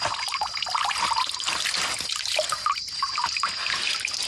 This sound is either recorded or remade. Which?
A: recorded